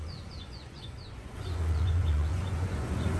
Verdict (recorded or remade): remade